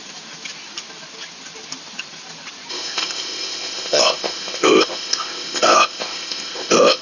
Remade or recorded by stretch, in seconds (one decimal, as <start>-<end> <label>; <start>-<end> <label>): 0.0-2.7 recorded; 2.7-7.0 remade